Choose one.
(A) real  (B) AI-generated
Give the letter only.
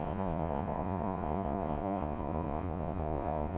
B